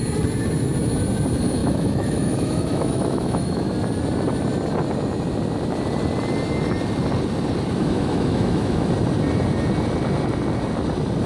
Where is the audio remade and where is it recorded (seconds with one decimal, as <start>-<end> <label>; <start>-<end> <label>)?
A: 0.0-1.6 recorded; 1.6-3.7 remade; 3.7-7.8 recorded; 7.8-8.9 remade; 8.9-11.3 recorded